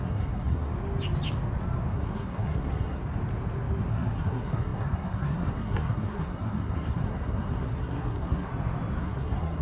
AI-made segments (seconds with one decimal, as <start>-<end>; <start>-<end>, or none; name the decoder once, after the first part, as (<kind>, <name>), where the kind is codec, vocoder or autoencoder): 0.0-0.7 (codec, SNAC); 1.9-3.0; 3.8-8.5; 9.0-9.6